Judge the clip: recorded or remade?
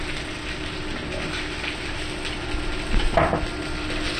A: recorded